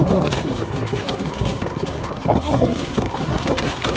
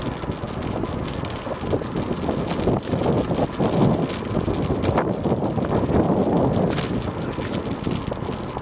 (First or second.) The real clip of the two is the second